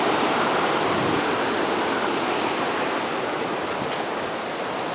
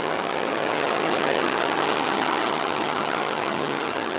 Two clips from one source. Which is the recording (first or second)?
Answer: first